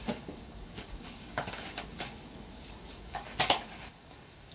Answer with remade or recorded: remade